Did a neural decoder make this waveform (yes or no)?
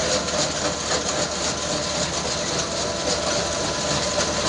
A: no